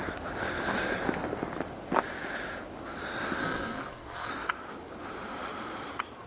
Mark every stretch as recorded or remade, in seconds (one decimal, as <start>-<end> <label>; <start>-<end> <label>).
0.0-3.4 recorded; 3.4-4.3 remade; 4.3-6.3 recorded